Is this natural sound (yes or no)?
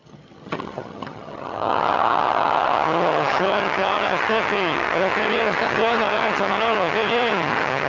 no